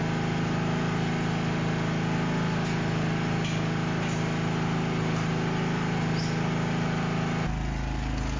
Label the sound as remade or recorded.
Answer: recorded